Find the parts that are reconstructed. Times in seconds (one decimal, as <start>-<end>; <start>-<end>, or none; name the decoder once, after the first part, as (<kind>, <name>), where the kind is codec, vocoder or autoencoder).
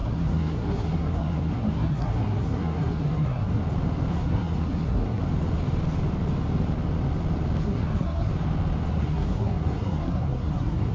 0.0-3.6 (codec, SNAC); 4.1-5.2; 7.6-8.3; 8.9-10.9